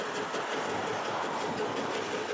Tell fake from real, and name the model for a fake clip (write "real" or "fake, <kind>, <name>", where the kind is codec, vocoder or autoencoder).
real